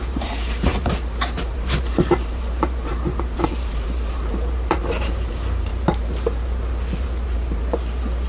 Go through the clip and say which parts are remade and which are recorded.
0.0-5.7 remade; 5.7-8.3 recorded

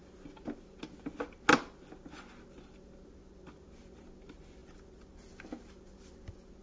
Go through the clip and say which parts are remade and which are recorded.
0.0-6.6 recorded

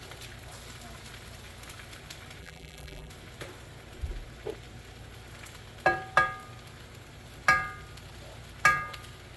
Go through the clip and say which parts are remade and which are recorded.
0.0-2.4 recorded; 2.4-3.1 remade; 3.1-9.4 recorded